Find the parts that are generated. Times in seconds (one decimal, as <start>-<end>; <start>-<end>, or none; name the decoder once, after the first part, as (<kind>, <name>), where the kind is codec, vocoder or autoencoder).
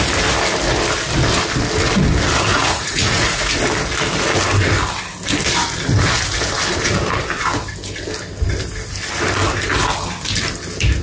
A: 2.5-3.5 (vocoder, Vocos)